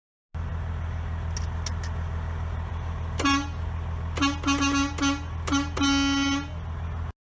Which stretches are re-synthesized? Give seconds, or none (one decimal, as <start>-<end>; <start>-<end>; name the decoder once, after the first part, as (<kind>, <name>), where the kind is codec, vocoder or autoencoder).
none